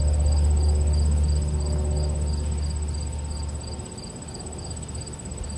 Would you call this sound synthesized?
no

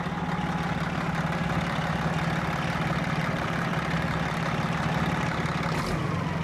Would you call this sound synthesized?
no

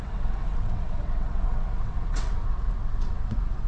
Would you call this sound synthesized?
yes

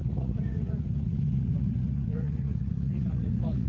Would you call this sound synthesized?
yes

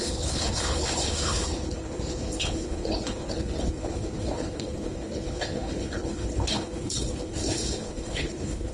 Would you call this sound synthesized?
yes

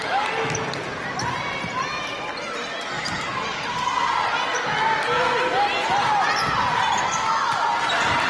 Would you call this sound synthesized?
no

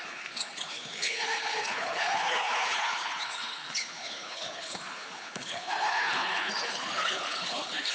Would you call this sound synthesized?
yes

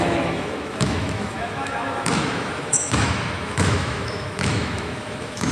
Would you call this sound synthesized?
yes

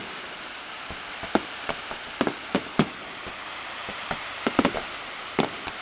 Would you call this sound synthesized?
no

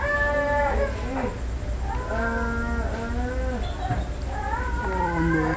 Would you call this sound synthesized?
no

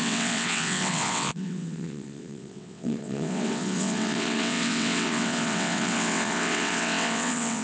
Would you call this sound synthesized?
yes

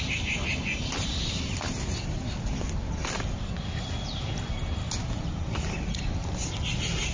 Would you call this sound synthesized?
no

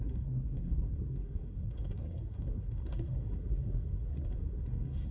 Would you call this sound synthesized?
yes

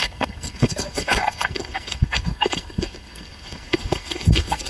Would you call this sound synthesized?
yes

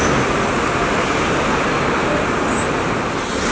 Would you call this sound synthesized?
no